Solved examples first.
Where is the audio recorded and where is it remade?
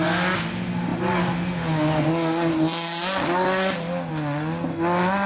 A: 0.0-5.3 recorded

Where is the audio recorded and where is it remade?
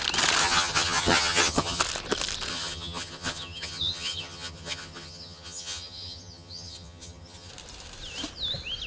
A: 0.0-0.4 recorded; 0.4-1.8 remade; 1.8-2.5 recorded; 2.5-7.5 remade; 7.5-8.9 recorded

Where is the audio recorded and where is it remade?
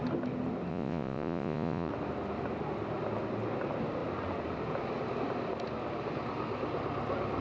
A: 0.0-0.7 recorded; 0.7-1.9 remade; 1.9-7.4 recorded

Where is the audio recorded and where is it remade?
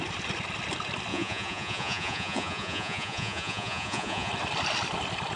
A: 0.0-1.1 recorded; 1.1-4.3 remade; 4.3-5.4 recorded